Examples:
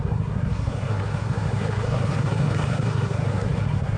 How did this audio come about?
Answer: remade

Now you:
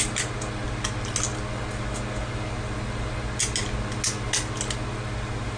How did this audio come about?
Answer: recorded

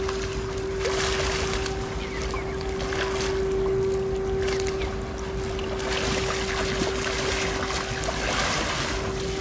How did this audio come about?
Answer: recorded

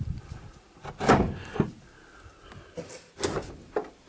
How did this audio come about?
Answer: recorded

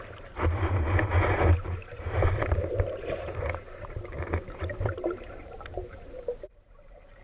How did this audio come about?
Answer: remade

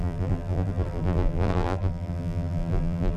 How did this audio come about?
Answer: remade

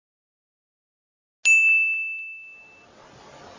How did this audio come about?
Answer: recorded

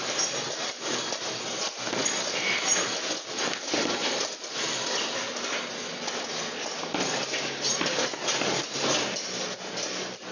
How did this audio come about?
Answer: recorded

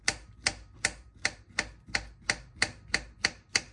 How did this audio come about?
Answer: recorded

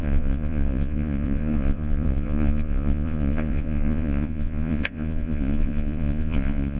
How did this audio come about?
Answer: remade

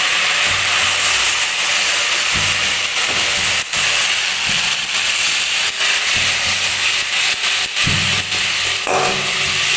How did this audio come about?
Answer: recorded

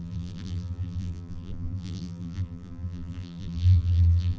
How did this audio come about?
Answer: remade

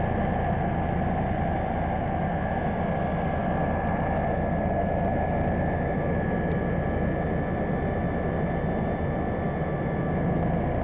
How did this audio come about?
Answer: recorded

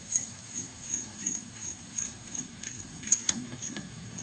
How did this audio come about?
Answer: remade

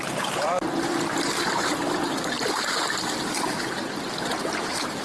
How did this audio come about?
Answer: remade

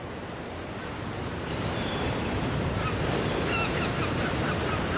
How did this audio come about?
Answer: remade